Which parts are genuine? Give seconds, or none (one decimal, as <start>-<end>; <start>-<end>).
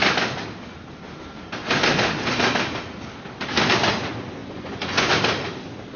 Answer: 0.0-4.4; 5.1-6.0